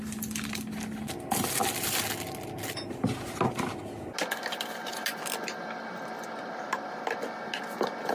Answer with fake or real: real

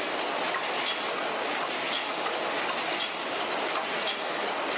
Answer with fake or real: real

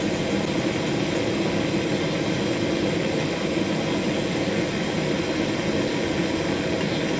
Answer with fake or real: real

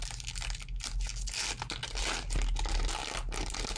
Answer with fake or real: real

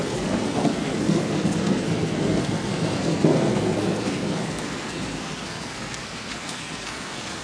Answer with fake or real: fake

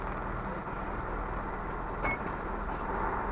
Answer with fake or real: real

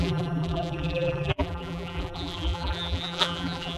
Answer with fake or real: fake